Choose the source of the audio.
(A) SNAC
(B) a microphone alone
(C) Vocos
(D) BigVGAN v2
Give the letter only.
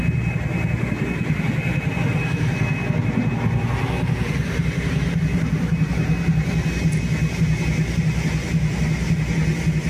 B